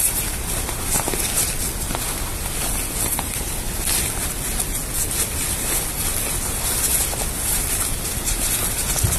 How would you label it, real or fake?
real